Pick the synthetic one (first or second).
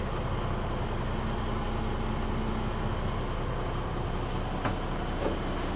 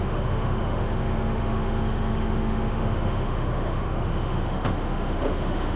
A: second